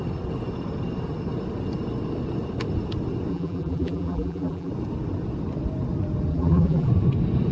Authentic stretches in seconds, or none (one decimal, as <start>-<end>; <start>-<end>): 0.0-3.3; 4.7-6.3; 6.9-7.5